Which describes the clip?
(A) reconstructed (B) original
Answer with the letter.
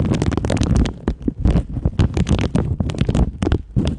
B